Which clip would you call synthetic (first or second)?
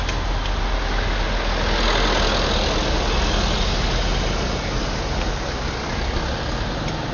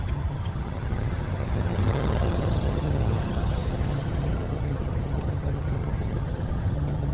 second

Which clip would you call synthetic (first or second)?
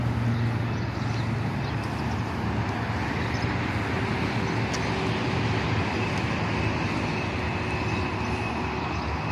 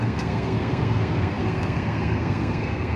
second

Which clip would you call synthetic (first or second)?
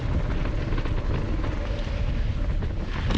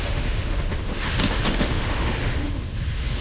second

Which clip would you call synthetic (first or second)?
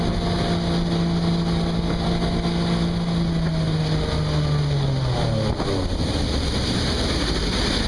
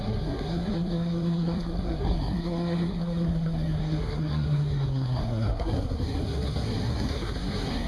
second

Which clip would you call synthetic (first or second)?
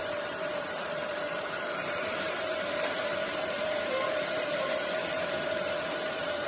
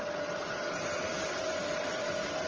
first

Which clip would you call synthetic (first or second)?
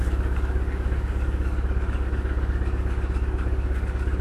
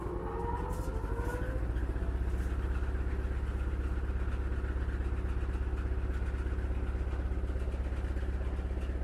first